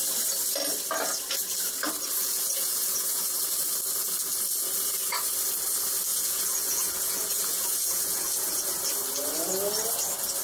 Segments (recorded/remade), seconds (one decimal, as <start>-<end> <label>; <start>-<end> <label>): 0.0-2.2 recorded; 2.2-3.4 remade; 3.4-6.1 recorded; 6.1-8.7 remade; 8.7-10.4 recorded